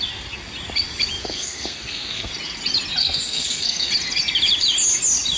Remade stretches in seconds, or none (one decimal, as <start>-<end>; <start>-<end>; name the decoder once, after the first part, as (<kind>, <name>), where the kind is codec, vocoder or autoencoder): 1.2-2.3 (codec, SNAC); 3.0-3.9